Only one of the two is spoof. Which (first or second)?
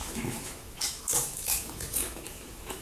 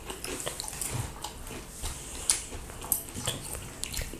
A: first